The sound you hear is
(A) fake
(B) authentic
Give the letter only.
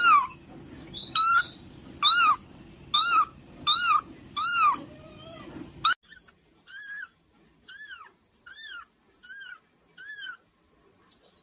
B